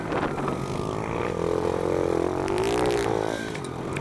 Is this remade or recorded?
recorded